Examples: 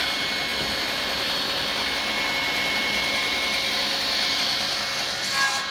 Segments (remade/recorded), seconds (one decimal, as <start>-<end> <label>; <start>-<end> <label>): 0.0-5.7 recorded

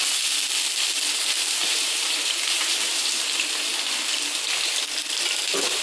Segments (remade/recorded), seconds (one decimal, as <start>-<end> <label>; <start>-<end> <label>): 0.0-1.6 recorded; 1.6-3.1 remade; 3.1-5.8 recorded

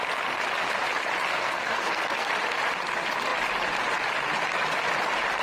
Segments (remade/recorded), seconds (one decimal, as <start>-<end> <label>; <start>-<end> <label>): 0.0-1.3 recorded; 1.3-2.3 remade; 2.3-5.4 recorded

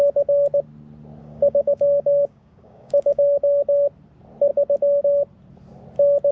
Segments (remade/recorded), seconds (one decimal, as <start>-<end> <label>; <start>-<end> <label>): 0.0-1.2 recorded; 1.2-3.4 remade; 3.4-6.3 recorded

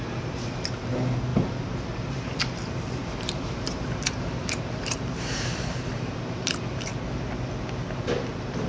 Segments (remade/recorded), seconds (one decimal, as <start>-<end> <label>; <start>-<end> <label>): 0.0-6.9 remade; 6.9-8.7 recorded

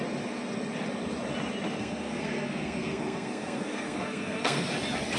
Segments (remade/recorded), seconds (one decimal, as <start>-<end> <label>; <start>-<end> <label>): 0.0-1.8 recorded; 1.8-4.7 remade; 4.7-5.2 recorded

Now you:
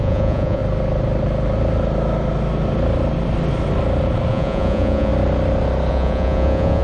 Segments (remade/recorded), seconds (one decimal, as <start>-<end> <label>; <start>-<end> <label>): 0.0-0.6 remade; 0.6-4.3 recorded; 4.3-5.1 remade; 5.1-5.9 recorded; 5.9-6.8 remade

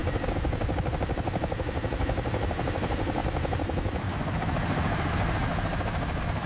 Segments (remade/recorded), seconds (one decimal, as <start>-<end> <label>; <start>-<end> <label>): 0.0-6.5 recorded